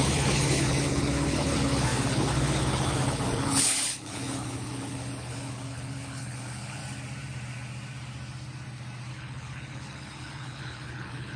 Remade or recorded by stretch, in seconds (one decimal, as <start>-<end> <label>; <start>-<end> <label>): 0.0-6.8 remade; 6.8-9.1 recorded; 9.1-11.4 remade